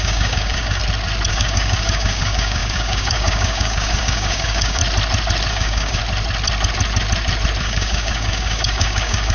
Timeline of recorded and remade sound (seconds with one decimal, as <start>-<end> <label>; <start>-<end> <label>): 0.0-0.8 remade; 0.8-1.3 recorded; 1.3-4.8 remade; 4.8-5.5 recorded; 5.5-6.0 remade; 6.0-7.6 recorded; 7.6-9.3 remade